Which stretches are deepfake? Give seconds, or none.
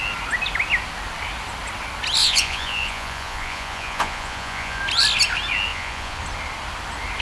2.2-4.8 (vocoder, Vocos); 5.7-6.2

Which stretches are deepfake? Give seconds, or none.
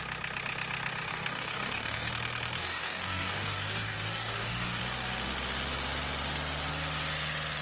1.1-2.1 (codec, DAC); 2.6-4.8